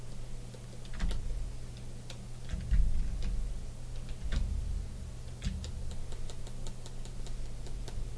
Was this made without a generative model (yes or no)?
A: yes